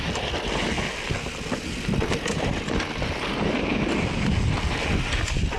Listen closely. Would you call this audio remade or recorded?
recorded